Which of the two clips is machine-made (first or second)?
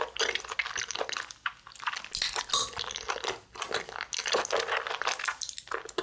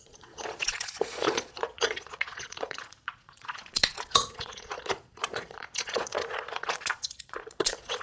second